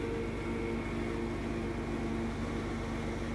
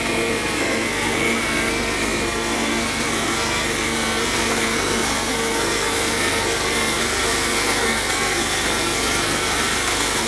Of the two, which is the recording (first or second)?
first